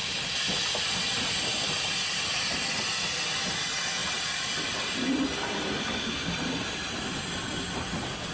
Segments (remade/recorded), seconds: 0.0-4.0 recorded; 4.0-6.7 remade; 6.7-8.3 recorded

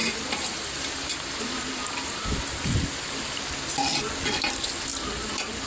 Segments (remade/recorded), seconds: 0.0-3.4 remade; 3.4-4.9 recorded; 4.9-5.7 remade

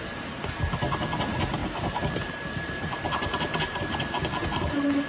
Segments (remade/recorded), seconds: 0.0-1.6 recorded; 1.6-5.1 remade

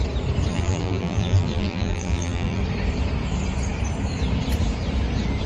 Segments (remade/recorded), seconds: 0.0-0.5 recorded; 0.5-2.6 remade; 2.6-5.5 recorded